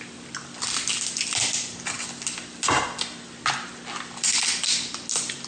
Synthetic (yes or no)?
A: no